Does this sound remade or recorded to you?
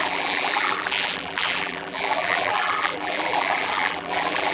remade